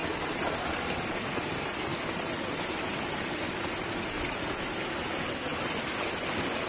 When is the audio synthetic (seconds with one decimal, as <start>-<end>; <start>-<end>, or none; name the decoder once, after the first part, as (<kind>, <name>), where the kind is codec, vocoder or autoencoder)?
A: none